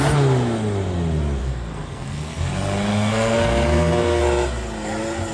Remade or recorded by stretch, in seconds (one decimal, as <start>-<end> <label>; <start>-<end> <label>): 0.0-1.4 recorded; 1.4-2.5 remade; 2.5-2.9 recorded; 2.9-4.2 remade; 4.2-5.3 recorded